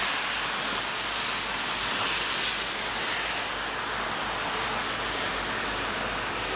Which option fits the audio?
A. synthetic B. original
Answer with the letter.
B